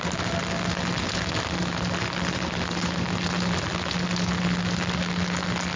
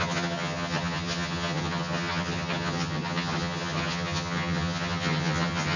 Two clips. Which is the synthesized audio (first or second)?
second